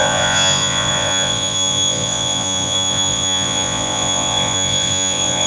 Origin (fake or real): fake